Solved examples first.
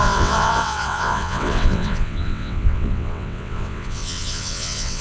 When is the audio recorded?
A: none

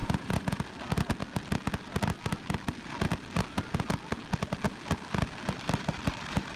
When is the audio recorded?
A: 0.6-6.6